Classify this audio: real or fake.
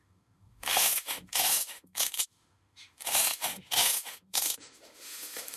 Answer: fake